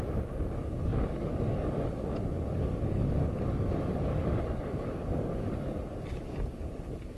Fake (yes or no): yes